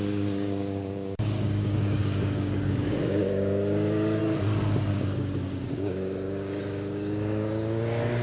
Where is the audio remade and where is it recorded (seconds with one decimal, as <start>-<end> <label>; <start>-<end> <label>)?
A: 0.0-4.2 remade; 4.2-4.9 recorded; 4.9-8.2 remade